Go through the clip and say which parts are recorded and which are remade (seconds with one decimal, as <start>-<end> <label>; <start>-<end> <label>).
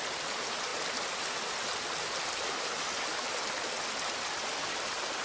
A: 0.0-5.2 recorded